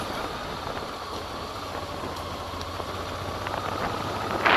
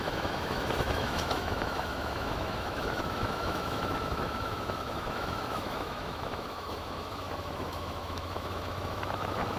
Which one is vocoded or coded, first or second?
second